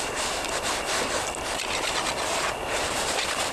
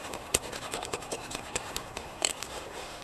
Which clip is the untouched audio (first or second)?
first